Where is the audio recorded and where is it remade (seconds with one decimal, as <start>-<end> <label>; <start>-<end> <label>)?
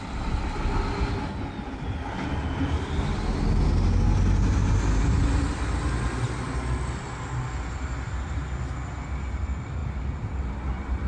0.0-11.1 recorded